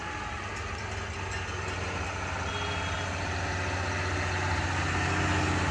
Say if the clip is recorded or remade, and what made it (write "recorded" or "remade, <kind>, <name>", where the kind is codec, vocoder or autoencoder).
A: recorded